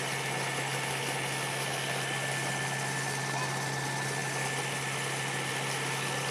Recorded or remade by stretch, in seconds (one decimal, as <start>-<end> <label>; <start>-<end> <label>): 0.0-6.3 recorded